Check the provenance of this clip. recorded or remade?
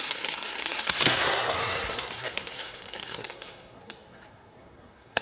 remade